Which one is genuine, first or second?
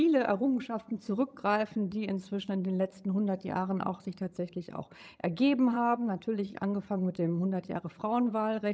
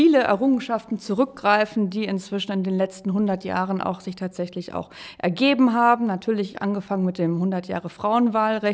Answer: second